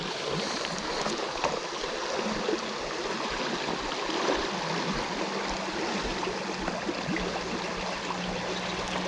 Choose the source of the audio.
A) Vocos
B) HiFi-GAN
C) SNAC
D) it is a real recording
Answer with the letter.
D